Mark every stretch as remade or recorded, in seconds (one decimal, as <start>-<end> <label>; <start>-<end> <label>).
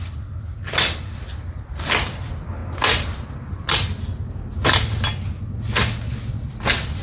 0.0-2.6 remade; 2.6-7.0 recorded